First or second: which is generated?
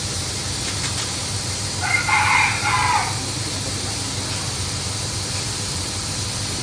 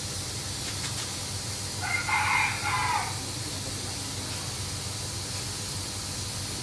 first